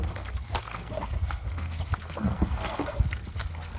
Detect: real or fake fake